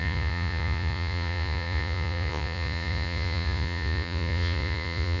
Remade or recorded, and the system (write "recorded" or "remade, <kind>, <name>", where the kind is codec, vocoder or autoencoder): remade, vocoder, Vocos